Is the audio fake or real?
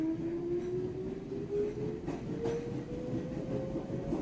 real